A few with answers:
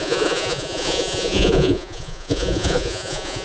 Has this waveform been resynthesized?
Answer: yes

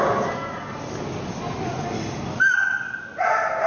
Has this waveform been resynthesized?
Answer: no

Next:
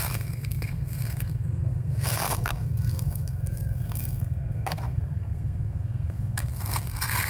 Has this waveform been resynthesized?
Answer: yes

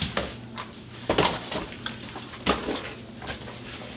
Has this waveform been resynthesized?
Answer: no